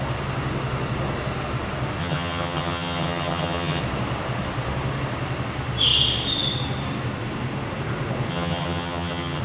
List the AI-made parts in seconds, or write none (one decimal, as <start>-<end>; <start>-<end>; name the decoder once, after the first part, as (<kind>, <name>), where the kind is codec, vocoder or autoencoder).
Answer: 2.0-3.8 (vocoder, HiFi-GAN); 8.3-9.4